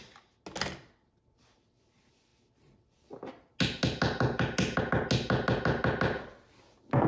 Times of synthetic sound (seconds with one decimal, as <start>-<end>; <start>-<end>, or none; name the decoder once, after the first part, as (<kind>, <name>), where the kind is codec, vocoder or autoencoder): none